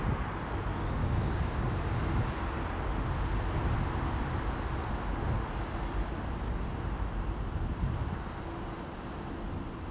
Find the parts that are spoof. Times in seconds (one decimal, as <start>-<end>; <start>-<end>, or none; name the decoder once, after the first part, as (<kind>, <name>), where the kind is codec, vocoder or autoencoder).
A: 1.0-2.2 (codec, DAC)